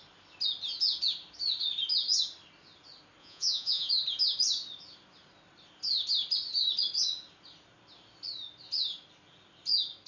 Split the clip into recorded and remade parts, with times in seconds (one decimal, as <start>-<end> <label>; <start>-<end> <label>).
0.0-3.2 recorded; 3.2-3.9 remade; 3.9-10.1 recorded